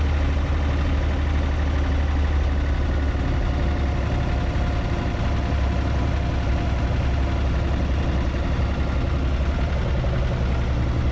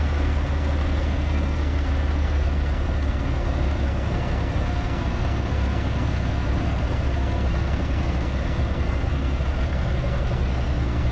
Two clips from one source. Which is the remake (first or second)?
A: second